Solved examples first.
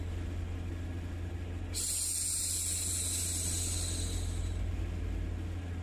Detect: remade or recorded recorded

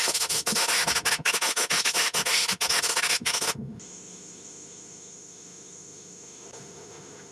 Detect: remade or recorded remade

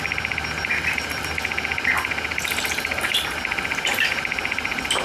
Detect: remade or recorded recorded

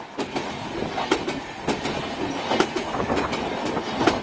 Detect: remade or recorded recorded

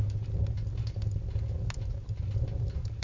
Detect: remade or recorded recorded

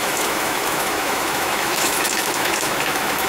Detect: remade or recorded remade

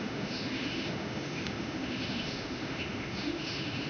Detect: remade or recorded remade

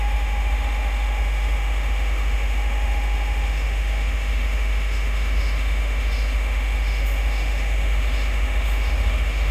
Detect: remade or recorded remade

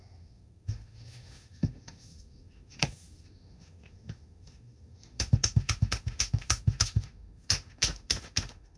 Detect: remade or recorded remade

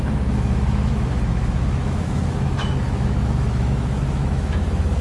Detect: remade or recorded remade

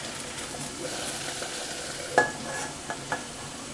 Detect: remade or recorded recorded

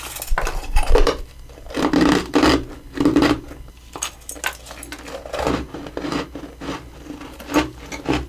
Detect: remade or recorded recorded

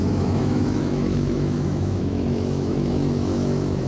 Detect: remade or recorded remade